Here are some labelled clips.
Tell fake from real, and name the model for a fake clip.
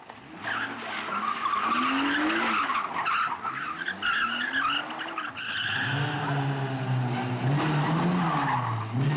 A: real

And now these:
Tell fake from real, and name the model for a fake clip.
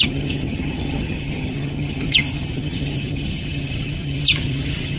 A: fake, vocoder, HiFi-GAN